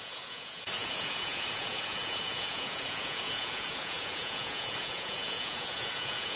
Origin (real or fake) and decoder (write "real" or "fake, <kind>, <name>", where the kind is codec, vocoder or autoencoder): fake, vocoder, Vocos